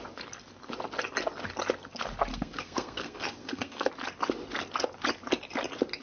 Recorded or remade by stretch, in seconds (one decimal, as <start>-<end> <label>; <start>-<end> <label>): 0.0-2.3 recorded; 2.3-3.9 remade; 3.9-6.0 recorded